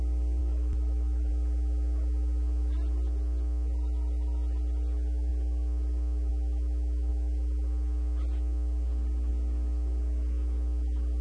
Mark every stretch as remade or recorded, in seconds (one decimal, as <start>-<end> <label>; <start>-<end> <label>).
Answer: 0.0-0.4 recorded; 0.4-1.3 remade; 1.3-11.2 recorded